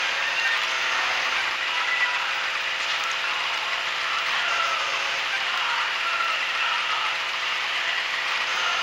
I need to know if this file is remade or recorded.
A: remade